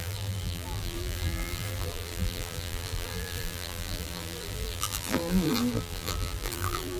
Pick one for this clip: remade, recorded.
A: remade